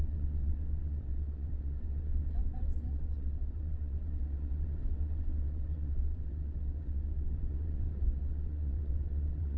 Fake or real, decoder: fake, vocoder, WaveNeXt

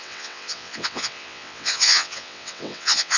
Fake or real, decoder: fake, vocoder, WaveNeXt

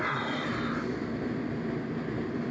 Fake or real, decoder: real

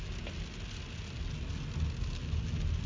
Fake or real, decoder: real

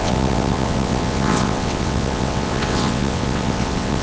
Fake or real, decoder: fake, vocoder, WaveNeXt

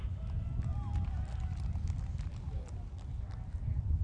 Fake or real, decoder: real